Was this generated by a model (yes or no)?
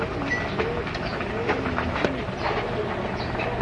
no